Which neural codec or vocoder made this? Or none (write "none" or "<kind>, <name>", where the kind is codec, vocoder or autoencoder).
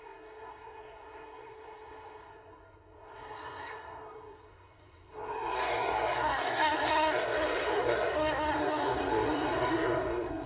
codec, SNAC